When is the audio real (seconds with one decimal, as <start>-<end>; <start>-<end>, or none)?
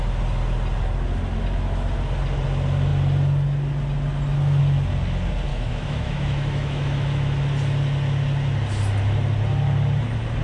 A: 0.0-5.5; 7.4-10.4